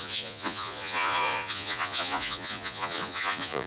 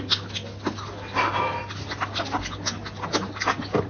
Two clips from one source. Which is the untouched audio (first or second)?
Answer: second